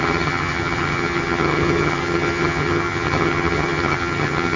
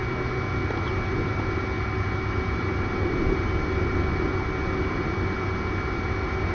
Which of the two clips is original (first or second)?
second